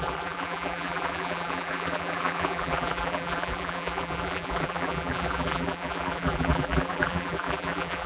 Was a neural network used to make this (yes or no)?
yes